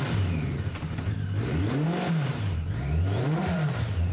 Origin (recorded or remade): remade